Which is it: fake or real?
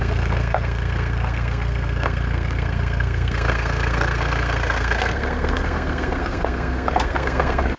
fake